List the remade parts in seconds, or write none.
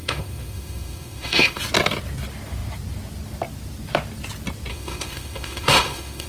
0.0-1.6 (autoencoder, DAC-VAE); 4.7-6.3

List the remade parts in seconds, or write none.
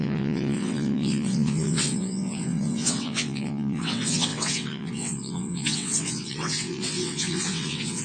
0.0-8.0 (vocoder, WaveNeXt)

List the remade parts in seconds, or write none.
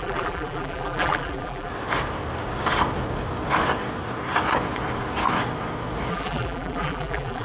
0.0-1.7 (vocoder, BigVGAN v2); 6.1-7.4